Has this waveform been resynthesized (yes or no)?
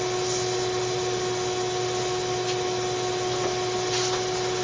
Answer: no